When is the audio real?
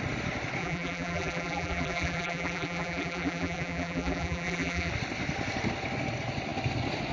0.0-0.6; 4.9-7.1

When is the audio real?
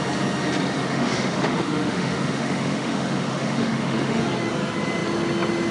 0.0-0.8; 4.2-5.7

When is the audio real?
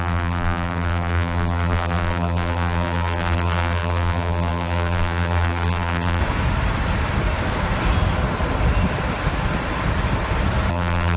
6.2-10.7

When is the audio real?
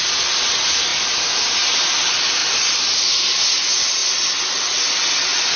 0.0-0.9; 1.5-5.6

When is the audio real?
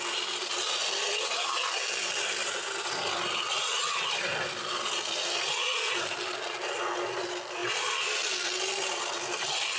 0.0-9.8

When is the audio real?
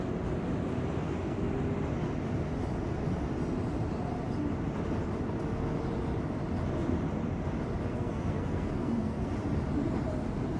0.0-1.0; 1.5-7.9; 9.3-10.6